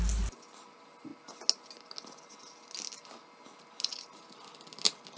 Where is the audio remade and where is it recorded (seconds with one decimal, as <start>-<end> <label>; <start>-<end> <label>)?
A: 0.0-5.2 recorded